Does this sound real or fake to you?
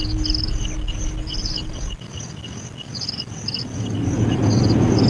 real